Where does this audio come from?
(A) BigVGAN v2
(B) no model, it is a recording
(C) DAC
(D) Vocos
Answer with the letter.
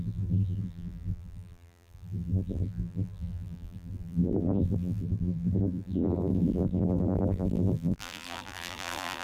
A